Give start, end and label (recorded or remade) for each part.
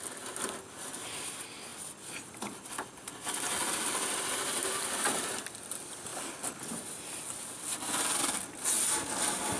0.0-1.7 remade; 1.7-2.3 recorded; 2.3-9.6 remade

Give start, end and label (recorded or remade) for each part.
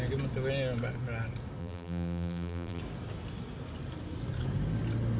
0.0-1.6 recorded; 1.6-2.8 remade; 2.8-5.2 recorded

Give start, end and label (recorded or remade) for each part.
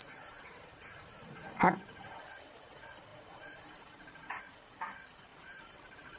0.0-2.2 remade; 2.2-3.1 recorded; 3.1-4.4 remade; 4.4-5.3 recorded; 5.3-6.2 remade